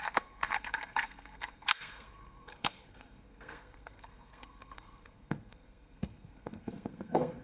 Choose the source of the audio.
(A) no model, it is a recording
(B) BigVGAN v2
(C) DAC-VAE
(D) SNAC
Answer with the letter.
D